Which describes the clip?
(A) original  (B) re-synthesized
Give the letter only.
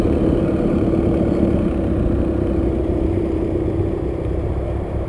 B